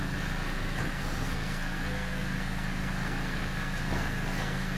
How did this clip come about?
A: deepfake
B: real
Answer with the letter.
A